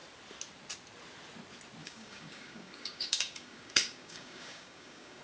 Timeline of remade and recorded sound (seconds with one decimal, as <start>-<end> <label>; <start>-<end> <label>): 0.0-1.8 recorded; 1.8-5.2 remade